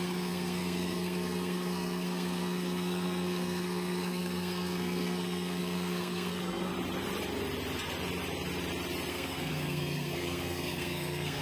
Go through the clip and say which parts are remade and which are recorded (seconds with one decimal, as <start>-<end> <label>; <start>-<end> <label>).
0.0-6.7 remade; 6.7-9.1 recorded; 9.1-11.4 remade